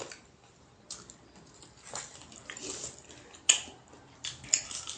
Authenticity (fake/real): real